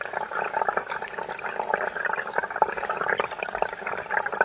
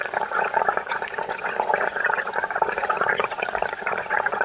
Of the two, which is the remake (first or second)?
second